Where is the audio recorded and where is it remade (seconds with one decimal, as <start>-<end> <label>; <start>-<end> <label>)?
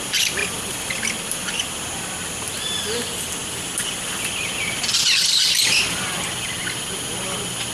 0.0-7.7 recorded